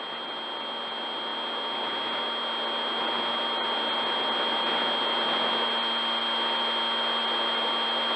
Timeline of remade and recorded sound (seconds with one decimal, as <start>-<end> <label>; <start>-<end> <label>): 0.0-8.2 recorded